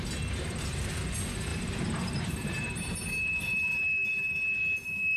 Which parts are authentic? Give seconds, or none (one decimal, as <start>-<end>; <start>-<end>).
0.0-1.5; 4.6-5.2